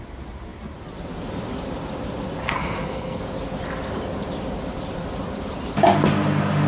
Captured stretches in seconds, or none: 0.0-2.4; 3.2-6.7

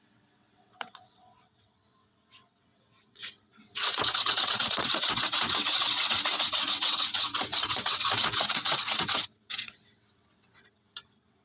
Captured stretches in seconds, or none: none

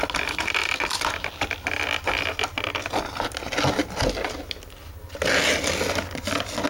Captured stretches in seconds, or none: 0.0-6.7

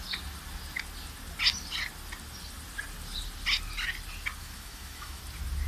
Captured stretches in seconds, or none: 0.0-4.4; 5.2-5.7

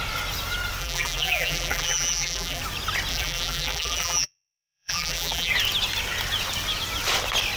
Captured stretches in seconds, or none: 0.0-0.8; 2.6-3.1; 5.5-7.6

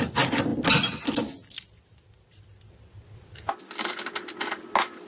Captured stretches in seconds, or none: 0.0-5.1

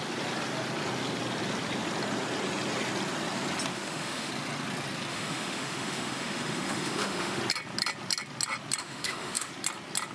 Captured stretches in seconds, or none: 0.0-3.7; 4.3-5.1; 7.4-8.8; 9.5-10.1